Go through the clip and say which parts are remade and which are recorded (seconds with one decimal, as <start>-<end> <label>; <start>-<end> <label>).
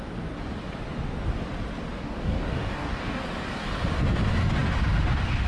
0.0-2.0 recorded; 2.0-3.2 remade; 3.2-5.5 recorded